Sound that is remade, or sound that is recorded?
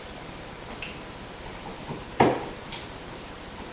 recorded